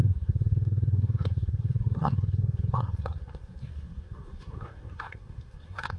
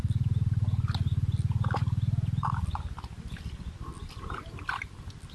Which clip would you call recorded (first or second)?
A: second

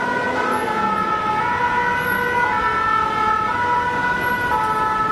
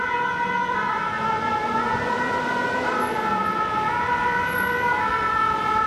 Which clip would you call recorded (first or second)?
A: first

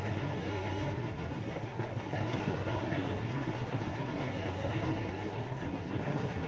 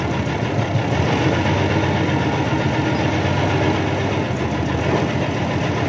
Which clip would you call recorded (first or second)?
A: second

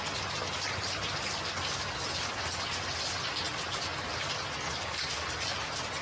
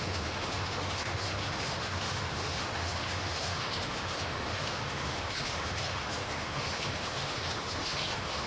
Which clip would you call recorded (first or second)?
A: first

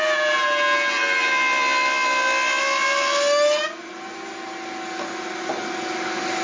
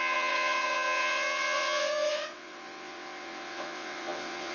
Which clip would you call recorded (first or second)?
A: first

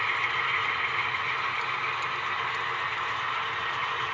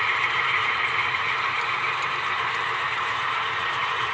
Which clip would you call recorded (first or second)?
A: first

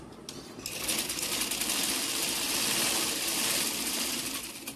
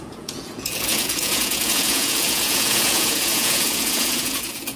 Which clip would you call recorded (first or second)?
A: first